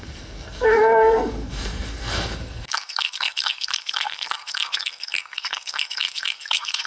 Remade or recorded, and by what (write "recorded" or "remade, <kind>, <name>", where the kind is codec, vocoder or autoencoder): remade, codec, SNAC